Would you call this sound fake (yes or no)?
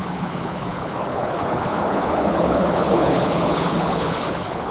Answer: yes